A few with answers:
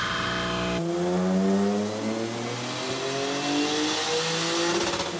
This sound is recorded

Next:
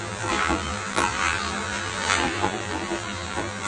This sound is remade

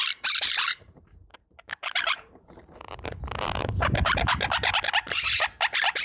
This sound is remade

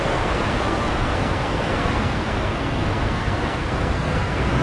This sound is remade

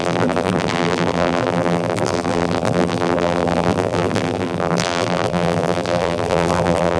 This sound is remade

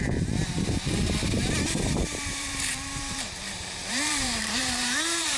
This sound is remade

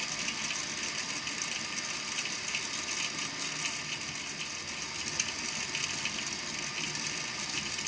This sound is recorded